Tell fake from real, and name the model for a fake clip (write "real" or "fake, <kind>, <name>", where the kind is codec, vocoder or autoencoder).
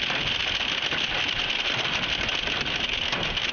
real